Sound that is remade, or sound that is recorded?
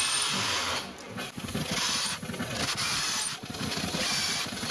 recorded